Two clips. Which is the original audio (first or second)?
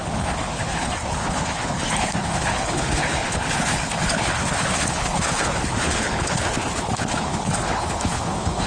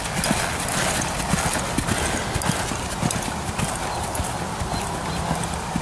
second